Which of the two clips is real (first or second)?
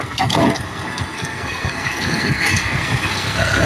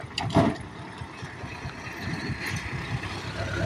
second